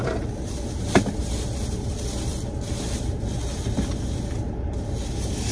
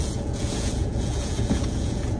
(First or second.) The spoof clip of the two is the second